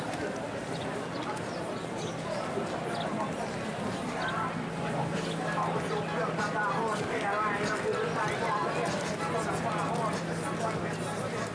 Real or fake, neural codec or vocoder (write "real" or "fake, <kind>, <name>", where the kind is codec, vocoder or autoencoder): real